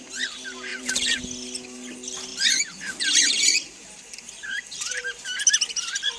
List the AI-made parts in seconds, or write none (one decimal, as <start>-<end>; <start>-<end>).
0.7-1.2; 2.3-5.0